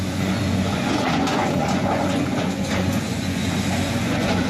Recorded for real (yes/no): no